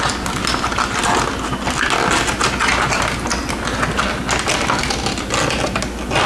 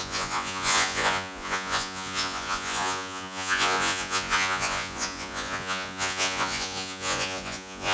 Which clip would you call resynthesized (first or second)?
second